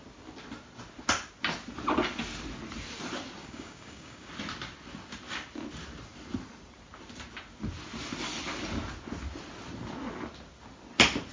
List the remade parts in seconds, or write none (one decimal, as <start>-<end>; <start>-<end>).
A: 3.4-4.3